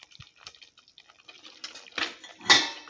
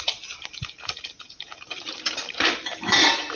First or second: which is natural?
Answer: first